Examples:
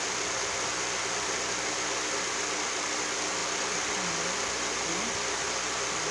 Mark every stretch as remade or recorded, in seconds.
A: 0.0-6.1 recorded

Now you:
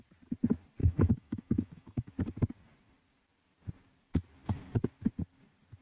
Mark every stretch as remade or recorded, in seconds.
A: 0.0-0.8 recorded; 0.8-2.1 remade; 2.1-5.8 recorded

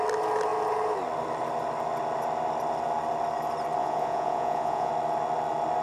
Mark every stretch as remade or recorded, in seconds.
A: 0.0-3.8 recorded; 3.8-4.9 remade; 4.9-5.8 recorded

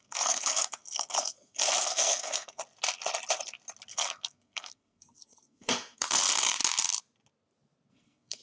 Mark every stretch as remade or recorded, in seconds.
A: 0.0-2.6 remade; 2.6-3.9 recorded; 3.9-6.6 remade; 6.6-7.9 recorded; 7.9-8.4 remade

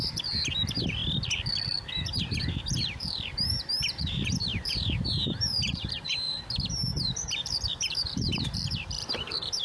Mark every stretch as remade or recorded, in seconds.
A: 0.0-1.0 remade; 1.0-2.5 recorded; 2.5-9.6 remade

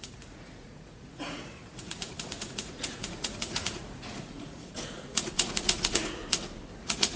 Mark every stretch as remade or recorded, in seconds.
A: 0.0-6.2 remade; 6.2-6.8 recorded; 6.8-7.2 remade

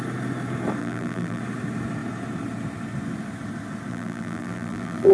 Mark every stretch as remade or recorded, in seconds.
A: 0.0-0.8 recorded; 0.8-1.4 remade; 1.4-3.9 recorded; 3.9-5.1 remade